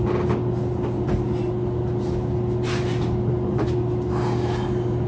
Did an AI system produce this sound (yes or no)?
no